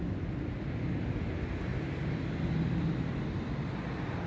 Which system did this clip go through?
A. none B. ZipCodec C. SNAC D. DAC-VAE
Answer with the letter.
A